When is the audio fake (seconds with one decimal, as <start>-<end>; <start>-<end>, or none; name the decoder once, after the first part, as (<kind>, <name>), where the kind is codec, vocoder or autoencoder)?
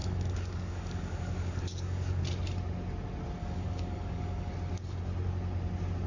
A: 0.0-2.2 (codec, DAC); 3.4-4.5